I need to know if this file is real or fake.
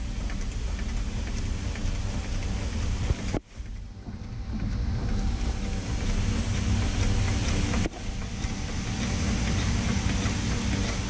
real